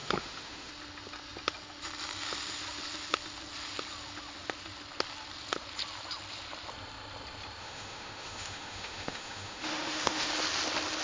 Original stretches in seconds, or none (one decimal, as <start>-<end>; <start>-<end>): 0.7-7.6; 10.3-11.0